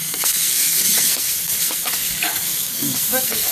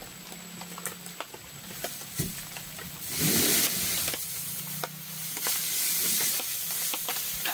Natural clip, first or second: second